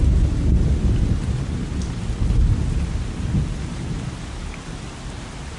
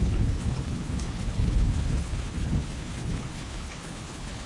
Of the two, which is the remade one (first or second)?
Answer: second